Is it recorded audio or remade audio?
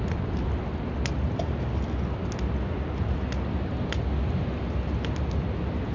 recorded